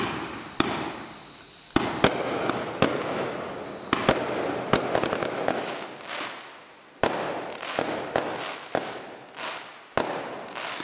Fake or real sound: real